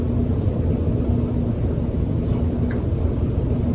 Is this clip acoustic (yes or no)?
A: yes